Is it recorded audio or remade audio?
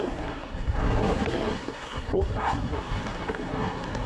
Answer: remade